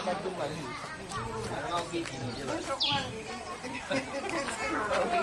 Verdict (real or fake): real